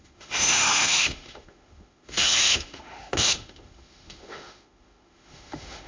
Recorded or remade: remade